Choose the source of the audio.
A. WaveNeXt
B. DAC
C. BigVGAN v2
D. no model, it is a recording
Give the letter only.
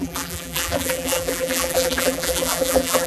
C